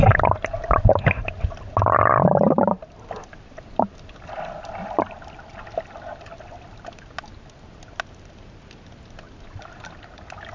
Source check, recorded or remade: recorded